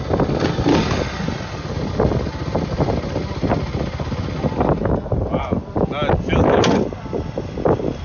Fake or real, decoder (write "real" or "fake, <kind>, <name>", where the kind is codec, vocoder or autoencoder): real